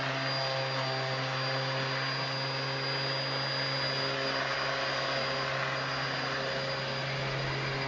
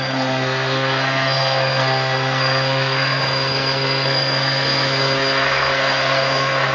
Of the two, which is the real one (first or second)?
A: first